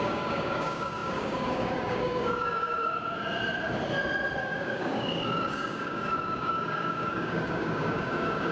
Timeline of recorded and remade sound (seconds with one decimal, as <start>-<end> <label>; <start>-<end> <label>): 0.0-2.9 remade; 2.9-4.4 recorded; 4.4-8.5 remade